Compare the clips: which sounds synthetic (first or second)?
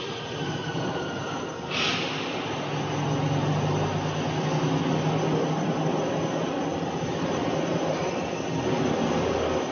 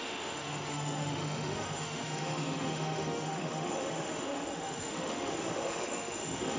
second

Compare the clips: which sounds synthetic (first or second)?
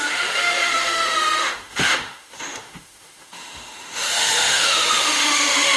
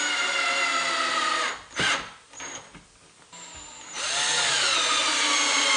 first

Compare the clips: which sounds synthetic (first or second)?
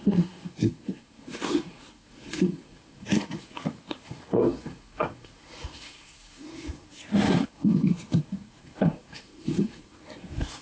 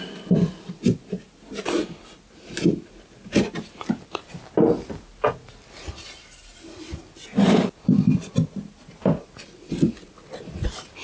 first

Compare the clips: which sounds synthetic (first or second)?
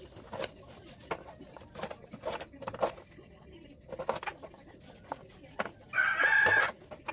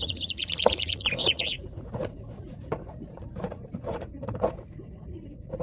second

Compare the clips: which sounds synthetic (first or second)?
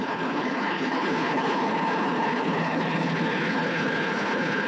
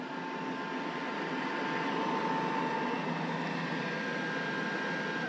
first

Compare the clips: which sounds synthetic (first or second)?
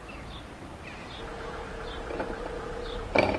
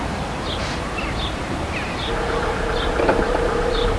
second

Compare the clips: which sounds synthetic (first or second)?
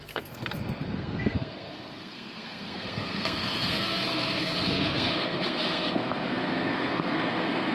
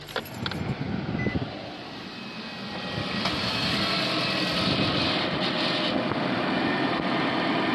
first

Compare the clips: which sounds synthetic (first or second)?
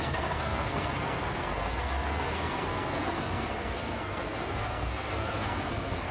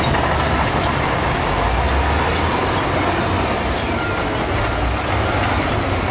first